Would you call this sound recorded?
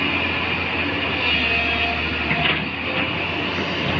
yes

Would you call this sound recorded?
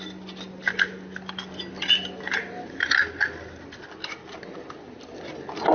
yes